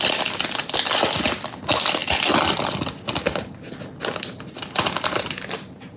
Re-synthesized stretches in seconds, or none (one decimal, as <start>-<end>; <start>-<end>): none